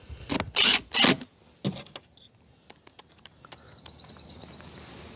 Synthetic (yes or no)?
no